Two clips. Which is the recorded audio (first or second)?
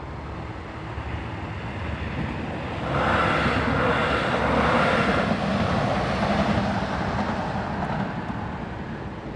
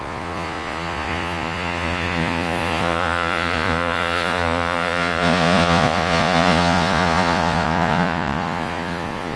first